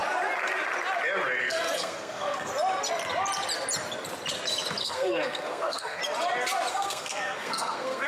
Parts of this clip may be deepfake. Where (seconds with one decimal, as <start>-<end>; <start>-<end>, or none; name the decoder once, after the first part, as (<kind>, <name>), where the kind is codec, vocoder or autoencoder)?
1.4-2.5 (codec, SNAC); 4.8-6.0; 6.7-8.1